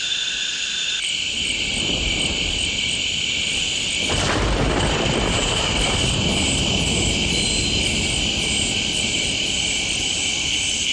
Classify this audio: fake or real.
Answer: real